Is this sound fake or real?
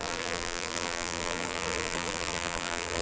fake